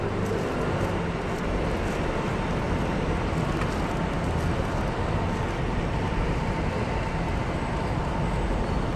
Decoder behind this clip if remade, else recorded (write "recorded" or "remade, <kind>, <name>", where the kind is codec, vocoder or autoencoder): recorded